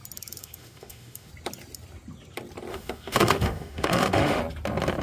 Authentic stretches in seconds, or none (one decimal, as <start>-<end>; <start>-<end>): 0.0-0.4; 1.3-2.7; 4.4-5.0